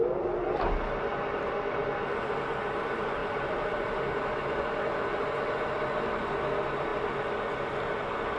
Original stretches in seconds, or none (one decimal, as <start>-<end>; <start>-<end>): 0.0-3.2; 4.0-8.4